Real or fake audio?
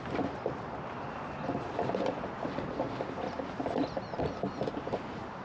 real